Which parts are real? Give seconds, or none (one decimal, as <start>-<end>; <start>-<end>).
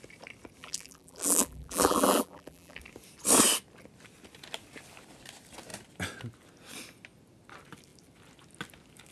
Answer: 0.0-0.6; 2.8-9.1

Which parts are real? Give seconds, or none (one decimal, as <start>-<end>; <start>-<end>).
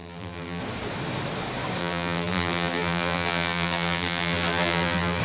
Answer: 0.6-1.8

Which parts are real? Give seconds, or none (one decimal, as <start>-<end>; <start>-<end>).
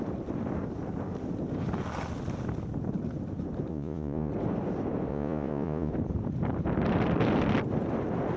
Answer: 0.0-3.7; 4.3-5.1; 5.9-8.4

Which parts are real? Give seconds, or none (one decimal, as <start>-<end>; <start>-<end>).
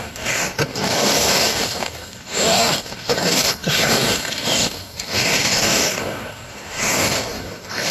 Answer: none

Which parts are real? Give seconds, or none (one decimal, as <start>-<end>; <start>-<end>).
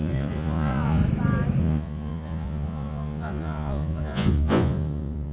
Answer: 1.0-1.6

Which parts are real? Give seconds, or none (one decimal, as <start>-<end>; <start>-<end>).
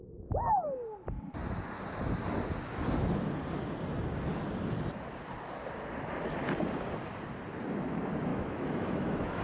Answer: 0.0-8.3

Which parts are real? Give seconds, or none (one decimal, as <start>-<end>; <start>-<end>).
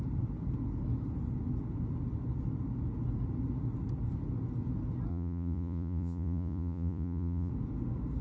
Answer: 0.0-5.1; 7.5-8.2